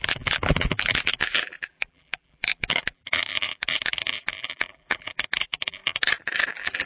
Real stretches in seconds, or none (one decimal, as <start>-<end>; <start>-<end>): 5.8-6.5